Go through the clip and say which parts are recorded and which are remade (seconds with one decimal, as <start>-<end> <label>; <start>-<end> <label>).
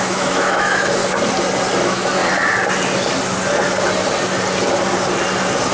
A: 0.0-1.0 remade; 1.0-1.8 recorded; 1.8-2.2 remade; 2.2-5.7 recorded